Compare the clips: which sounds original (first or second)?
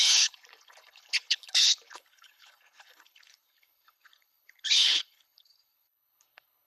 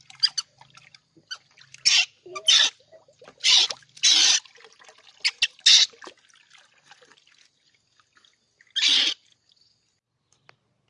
second